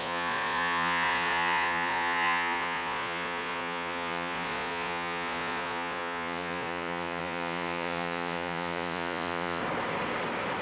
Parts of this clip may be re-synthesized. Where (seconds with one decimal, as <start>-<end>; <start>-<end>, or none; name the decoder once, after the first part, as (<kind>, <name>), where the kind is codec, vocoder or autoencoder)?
0.0-9.6 (vocoder, Vocos)